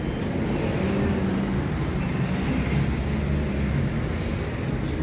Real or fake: real